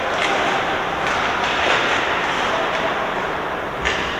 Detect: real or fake real